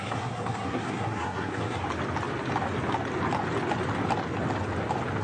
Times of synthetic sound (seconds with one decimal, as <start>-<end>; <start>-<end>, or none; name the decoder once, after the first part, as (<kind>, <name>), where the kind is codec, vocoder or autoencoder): 0.0-1.8 (codec, SNAC)